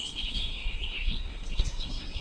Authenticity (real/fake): fake